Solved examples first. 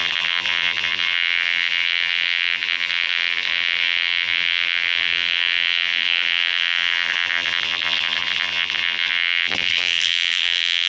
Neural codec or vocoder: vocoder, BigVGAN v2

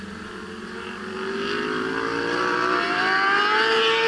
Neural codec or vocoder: none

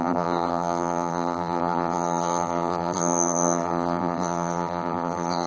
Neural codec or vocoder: vocoder, BigVGAN v2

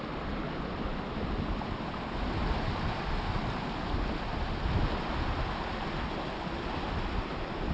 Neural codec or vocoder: none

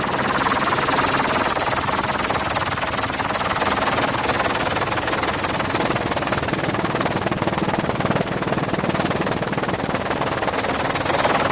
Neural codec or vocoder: none